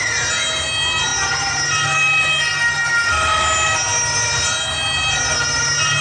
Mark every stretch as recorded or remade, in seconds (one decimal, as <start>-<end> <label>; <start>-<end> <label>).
0.0-6.0 recorded

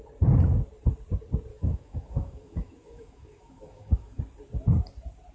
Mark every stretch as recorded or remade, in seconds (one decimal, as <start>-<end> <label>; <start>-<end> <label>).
0.0-1.5 recorded; 1.5-4.2 remade; 4.2-5.3 recorded

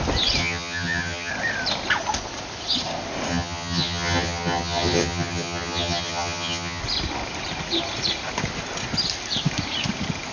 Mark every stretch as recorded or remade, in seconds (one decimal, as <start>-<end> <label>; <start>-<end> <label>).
0.0-0.4 recorded; 0.4-1.3 remade; 1.3-3.3 recorded; 3.3-6.8 remade; 6.8-10.3 recorded

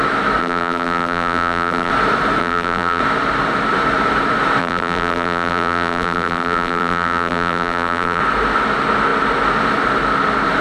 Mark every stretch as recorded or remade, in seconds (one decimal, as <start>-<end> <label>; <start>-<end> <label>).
0.0-0.4 recorded; 0.4-1.9 remade; 1.9-2.4 recorded; 2.4-3.0 remade; 3.0-4.6 recorded; 4.6-8.2 remade; 8.2-10.6 recorded

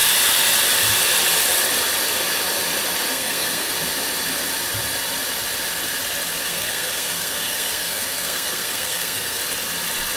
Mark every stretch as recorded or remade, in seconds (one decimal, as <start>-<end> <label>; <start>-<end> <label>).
0.0-3.1 recorded; 3.1-3.7 remade; 3.7-6.4 recorded; 6.4-9.4 remade; 9.4-10.2 recorded

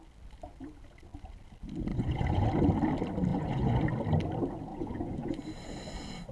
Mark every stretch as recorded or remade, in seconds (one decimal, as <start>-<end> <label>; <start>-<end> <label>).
0.0-1.9 recorded; 1.9-2.4 remade; 2.4-3.3 recorded; 3.3-3.8 remade; 3.8-4.7 recorded; 4.7-5.4 remade; 5.4-6.3 recorded

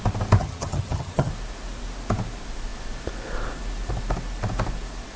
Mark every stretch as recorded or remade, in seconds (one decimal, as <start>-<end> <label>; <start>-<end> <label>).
0.0-0.4 recorded; 0.4-1.3 remade; 1.3-5.2 recorded

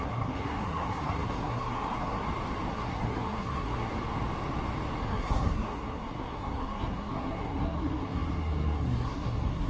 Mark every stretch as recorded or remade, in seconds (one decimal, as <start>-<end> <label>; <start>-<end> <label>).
0.0-2.2 remade; 2.2-2.7 recorded; 2.7-3.9 remade; 3.9-5.0 recorded; 5.0-9.7 remade